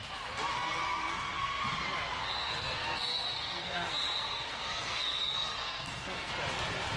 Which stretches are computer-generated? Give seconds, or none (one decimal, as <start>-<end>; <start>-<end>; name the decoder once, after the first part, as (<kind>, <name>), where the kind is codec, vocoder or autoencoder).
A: 0.5-1.6 (codec, SNAC); 2.2-6.3